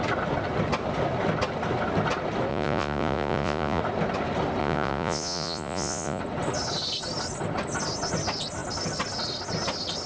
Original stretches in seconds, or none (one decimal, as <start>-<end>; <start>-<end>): 0.0-2.5; 3.8-4.6; 6.2-10.1